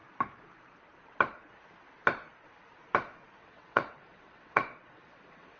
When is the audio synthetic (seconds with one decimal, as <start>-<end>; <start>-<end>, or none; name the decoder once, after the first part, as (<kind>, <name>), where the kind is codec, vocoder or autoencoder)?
3.4-5.6 (vocoder, WaveNeXt)